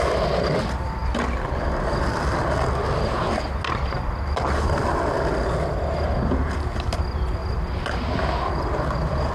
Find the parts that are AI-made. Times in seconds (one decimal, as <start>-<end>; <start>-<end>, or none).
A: 7.4-9.3